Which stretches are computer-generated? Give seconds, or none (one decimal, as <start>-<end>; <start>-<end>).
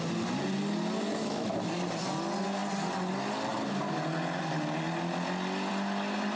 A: 1.2-1.7